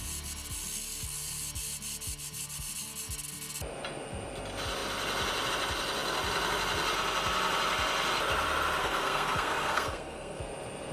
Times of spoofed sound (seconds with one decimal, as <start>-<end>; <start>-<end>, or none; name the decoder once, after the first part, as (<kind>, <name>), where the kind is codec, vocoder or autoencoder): 8.8-10.4 (codec, SNAC)